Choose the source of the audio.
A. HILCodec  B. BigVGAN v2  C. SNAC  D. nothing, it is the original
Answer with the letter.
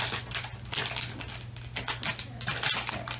D